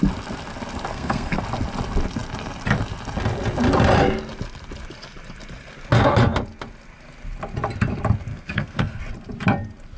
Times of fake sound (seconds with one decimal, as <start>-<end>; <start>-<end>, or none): 0.9-1.4; 8.3-9.0